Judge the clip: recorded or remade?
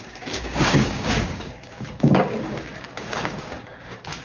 remade